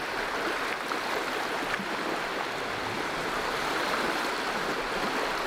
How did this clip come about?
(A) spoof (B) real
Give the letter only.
B